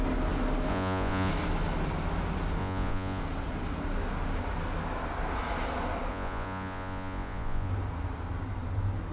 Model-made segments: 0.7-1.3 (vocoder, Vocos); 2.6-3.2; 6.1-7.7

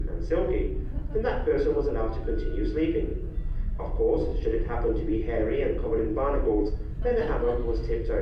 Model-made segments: 0.0-1.9 (vocoder, BigVGAN v2); 4.3-8.2

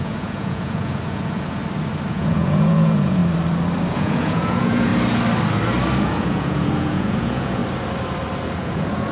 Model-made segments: 0.0-1.6 (vocoder, Vocos); 2.1-3.2; 3.9-4.9; 6.0-7.6; 8.6-9.1

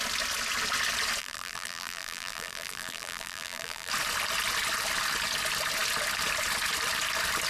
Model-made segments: 1.2-3.9 (vocoder, BigVGAN v2)